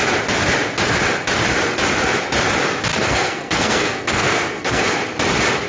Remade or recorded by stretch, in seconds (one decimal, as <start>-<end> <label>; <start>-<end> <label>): 0.0-2.9 recorded; 2.9-4.8 remade; 4.8-5.7 recorded